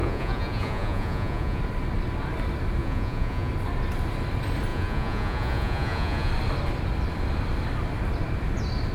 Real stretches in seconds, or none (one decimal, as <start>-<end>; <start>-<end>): 1.6-2.8; 3.5-4.7; 6.3-8.9